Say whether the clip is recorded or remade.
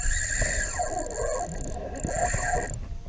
recorded